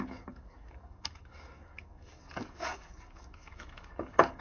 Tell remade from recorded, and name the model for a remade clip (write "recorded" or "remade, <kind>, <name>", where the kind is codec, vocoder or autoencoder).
remade, codec, DAC